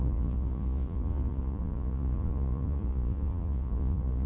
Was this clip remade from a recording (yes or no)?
yes